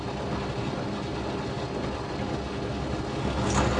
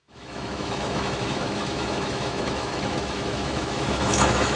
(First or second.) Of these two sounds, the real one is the first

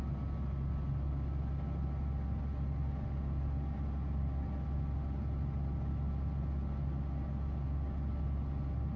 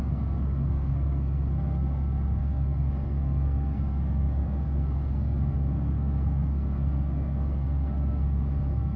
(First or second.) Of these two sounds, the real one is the first